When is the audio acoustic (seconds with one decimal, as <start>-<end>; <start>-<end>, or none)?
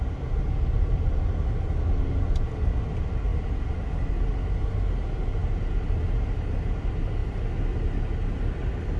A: 0.0-9.0